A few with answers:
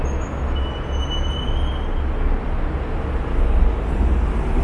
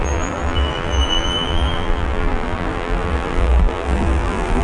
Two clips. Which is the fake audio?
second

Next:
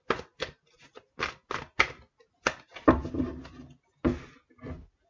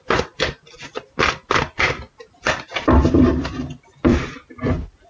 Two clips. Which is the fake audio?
second